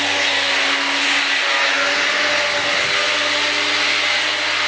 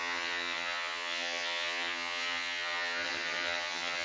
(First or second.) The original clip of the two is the first